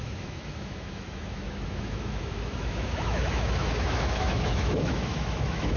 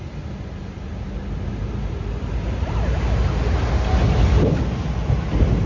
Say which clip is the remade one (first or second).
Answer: first